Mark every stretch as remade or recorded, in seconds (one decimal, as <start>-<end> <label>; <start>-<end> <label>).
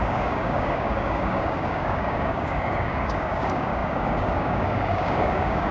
0.0-5.7 remade